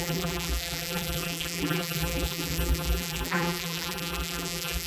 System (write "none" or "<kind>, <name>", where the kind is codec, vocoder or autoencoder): vocoder, BigVGAN v2